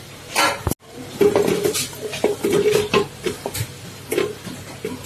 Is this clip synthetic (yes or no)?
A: no